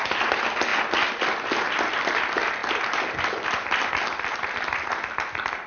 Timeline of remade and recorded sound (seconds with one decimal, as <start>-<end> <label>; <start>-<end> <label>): 0.0-5.7 recorded